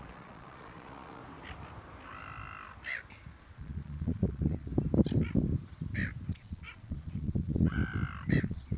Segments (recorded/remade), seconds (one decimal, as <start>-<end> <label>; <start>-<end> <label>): 0.0-1.2 remade; 1.2-3.4 recorded; 3.4-4.7 remade; 4.7-6.3 recorded; 6.3-7.8 remade; 7.8-8.4 recorded; 8.4-8.8 remade